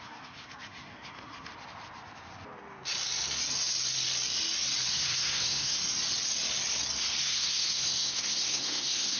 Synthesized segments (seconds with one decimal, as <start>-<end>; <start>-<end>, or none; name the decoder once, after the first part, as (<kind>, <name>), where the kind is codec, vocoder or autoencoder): 0.0-1.5 (codec, SNAC); 4.9-5.8; 7.2-9.2